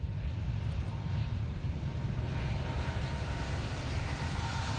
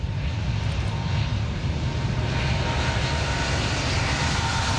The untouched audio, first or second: second